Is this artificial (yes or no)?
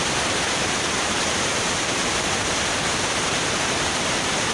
yes